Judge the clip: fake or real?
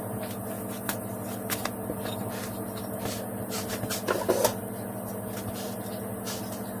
real